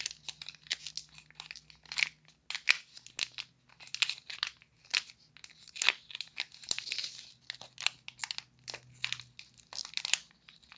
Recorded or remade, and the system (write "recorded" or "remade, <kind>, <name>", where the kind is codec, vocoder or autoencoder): recorded